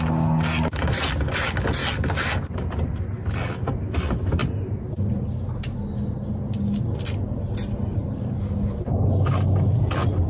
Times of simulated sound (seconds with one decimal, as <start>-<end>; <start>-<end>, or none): none